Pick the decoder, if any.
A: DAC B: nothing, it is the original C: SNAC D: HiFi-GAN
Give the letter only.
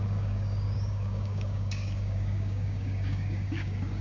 A